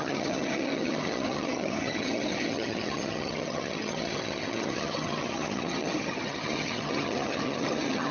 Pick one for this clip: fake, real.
fake